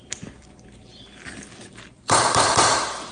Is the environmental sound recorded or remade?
remade